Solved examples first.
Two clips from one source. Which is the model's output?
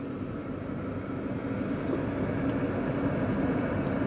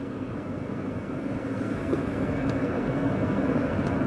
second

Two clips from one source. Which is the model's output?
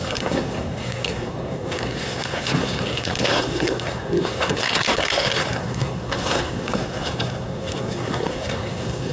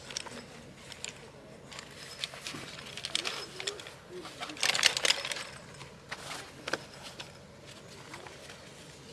first